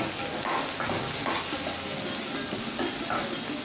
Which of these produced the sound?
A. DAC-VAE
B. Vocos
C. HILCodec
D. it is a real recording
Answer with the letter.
D